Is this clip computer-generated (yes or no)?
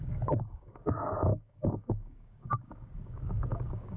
yes